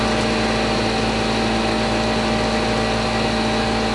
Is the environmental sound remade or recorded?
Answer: recorded